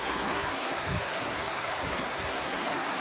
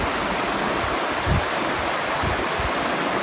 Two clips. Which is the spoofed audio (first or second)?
first